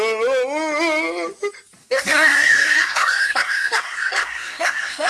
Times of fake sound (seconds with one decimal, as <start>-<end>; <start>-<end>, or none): 1.8-5.1